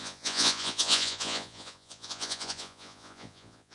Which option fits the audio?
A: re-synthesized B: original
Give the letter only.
A